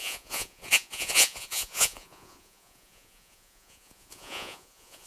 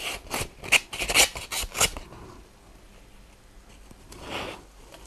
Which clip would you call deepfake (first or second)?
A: first